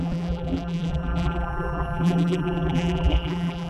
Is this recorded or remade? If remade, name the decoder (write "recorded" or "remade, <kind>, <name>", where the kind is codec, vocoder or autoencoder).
remade, vocoder, BigVGAN v2